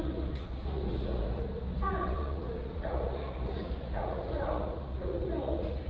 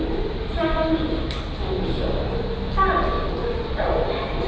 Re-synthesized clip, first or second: first